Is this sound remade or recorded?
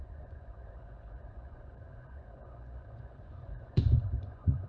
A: remade